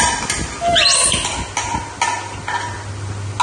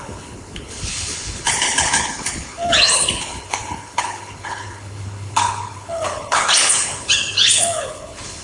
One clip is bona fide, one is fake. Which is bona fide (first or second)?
first